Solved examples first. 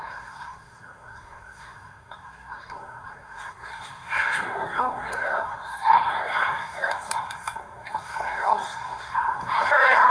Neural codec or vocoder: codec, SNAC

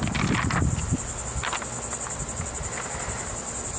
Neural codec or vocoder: none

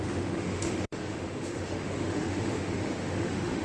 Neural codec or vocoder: autoencoder, DAC-VAE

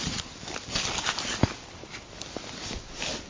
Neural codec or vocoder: none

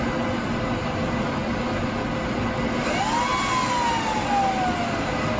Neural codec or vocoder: none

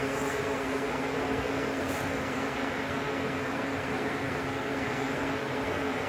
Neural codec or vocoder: codec, SNAC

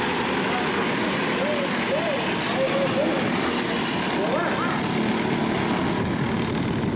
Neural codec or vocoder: none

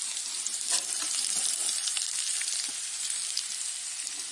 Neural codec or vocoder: none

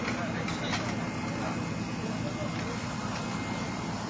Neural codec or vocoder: none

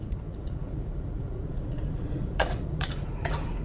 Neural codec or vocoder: vocoder, Vocos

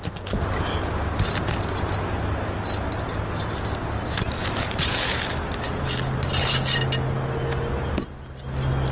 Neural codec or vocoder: none